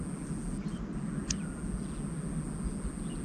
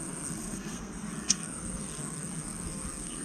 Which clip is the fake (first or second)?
second